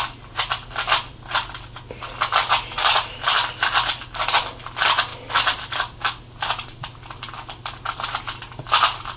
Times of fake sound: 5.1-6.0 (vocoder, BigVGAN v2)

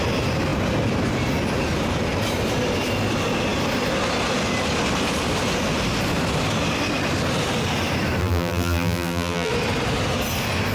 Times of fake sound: 8.2-9.5 (vocoder, BigVGAN v2)

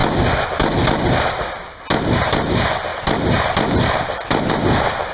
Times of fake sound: none